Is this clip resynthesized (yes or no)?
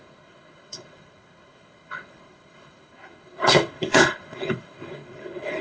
yes